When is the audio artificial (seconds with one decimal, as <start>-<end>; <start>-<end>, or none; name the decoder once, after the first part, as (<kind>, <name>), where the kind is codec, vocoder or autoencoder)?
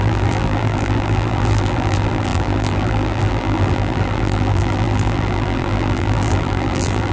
0.0-7.1 (vocoder, BigVGAN v2)